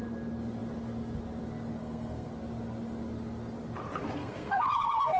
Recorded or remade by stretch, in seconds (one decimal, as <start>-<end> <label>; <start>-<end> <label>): 0.0-1.8 recorded; 1.8-2.3 remade; 2.3-4.2 recorded; 4.2-5.2 remade